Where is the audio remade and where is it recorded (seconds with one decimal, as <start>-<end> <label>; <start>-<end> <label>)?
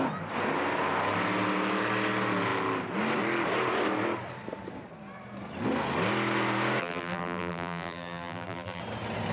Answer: 0.0-6.8 recorded; 6.8-8.8 remade; 8.8-9.3 recorded